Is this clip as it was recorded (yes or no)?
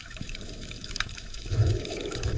no